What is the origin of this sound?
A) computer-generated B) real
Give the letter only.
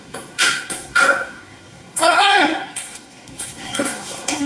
A